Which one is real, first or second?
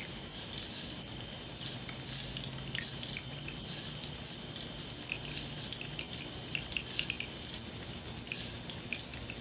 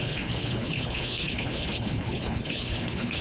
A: first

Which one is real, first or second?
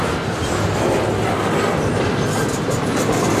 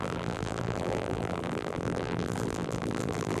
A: first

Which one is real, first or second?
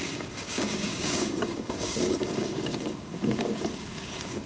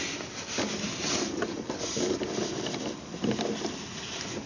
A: second